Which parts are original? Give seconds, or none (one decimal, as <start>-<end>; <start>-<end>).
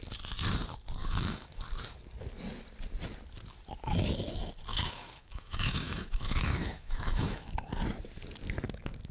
0.0-1.0; 1.6-4.7; 7.5-9.1